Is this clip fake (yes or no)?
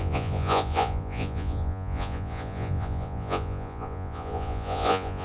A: yes